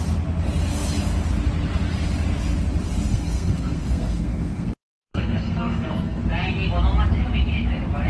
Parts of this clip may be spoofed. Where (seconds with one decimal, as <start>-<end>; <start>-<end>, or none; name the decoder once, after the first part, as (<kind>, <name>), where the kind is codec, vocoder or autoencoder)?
3.1-6.2 (codec, SNAC)